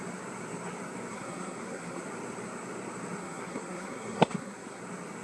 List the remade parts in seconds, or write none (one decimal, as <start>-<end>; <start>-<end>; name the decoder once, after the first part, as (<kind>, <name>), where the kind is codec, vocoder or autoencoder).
1.1-2.0 (codec, SNAC); 3.2-4.8